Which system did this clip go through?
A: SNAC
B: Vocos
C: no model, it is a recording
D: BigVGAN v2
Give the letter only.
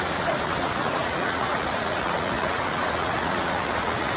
B